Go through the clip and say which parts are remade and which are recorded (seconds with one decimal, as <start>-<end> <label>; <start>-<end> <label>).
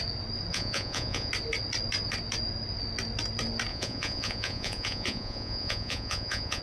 0.0-0.5 recorded; 0.5-1.3 remade; 1.3-3.7 recorded; 3.7-6.6 remade